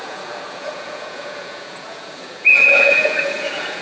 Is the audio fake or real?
fake